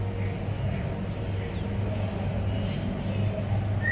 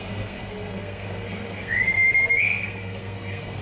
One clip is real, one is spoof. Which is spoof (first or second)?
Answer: second